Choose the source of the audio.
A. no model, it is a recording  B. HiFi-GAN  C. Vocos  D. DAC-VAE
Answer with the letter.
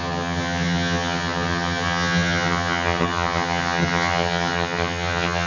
B